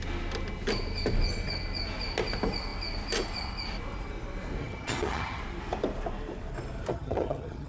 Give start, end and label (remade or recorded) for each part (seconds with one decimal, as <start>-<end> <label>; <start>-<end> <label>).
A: 0.0-4.6 recorded; 4.6-5.4 remade; 5.4-6.9 recorded; 6.9-7.7 remade